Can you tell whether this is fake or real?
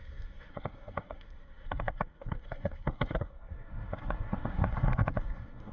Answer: fake